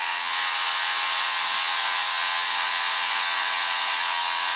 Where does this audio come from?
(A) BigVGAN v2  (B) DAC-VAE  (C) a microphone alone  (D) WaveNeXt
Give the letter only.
D